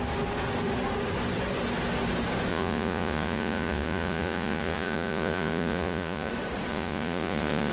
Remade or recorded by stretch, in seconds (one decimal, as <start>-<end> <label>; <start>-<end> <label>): 0.0-2.5 recorded; 2.5-6.3 remade; 6.3-6.7 recorded; 6.7-7.7 remade